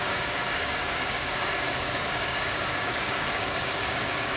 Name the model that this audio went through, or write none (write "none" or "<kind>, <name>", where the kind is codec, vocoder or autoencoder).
codec, DAC